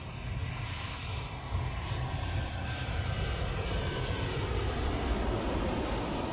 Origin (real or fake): real